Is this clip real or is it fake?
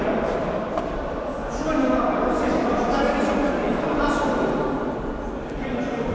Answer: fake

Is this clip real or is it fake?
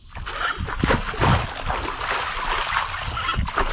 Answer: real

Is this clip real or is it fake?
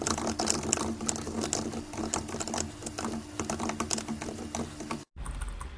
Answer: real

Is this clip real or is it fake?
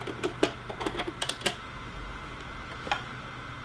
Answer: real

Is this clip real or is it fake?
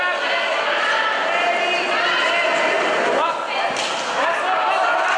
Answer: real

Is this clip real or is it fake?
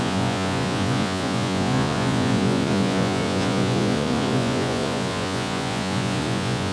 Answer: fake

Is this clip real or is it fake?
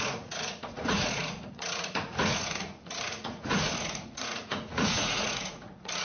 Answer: fake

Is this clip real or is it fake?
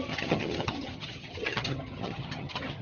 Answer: fake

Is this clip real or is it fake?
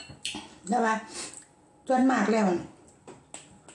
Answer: real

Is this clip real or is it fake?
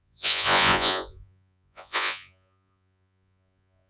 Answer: fake